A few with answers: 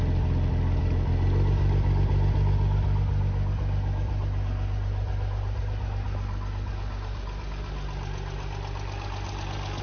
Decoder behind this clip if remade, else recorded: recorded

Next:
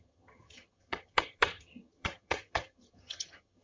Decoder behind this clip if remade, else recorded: remade, vocoder, HiFi-GAN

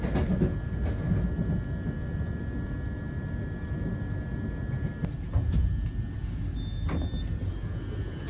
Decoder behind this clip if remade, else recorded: recorded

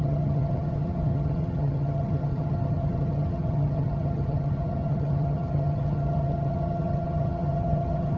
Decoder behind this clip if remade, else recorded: remade, vocoder, HiFi-GAN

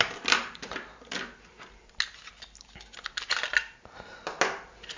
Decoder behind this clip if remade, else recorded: recorded